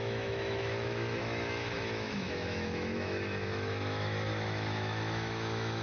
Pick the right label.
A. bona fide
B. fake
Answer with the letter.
B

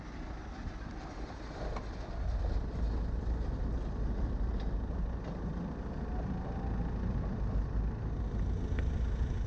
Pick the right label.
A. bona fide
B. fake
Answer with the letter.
A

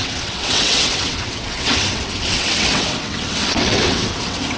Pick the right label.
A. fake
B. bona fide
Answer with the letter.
A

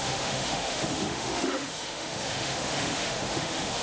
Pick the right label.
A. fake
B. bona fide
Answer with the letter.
A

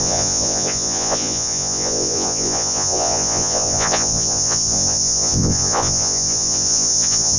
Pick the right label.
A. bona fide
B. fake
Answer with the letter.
B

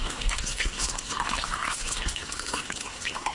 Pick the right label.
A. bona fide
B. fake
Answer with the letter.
B